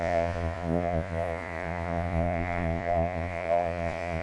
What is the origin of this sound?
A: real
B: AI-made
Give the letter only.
B